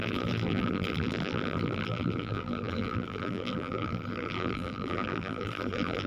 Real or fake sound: fake